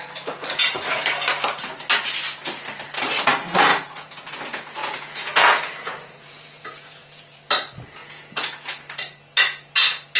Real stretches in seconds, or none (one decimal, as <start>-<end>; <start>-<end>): 0.0-3.7; 7.4-8.0; 8.8-10.2